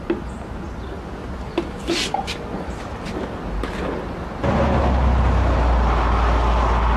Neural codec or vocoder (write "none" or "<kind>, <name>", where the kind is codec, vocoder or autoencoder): none